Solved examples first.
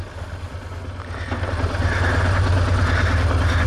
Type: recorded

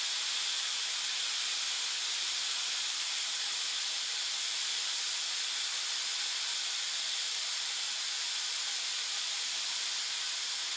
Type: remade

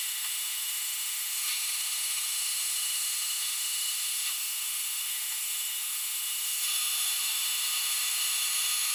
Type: remade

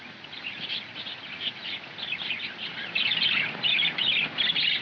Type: remade